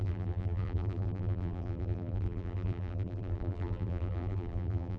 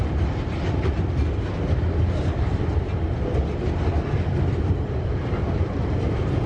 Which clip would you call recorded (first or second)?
second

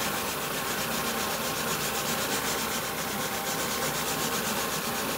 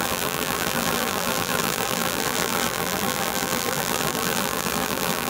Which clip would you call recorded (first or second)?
first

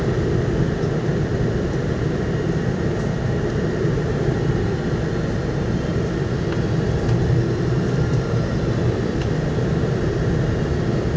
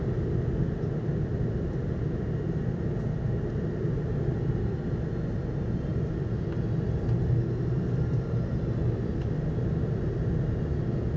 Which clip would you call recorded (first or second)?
second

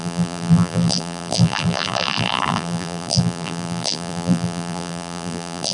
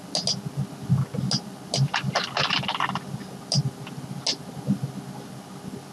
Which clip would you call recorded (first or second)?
second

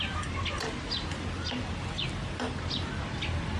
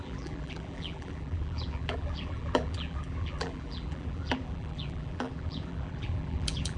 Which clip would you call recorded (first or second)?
first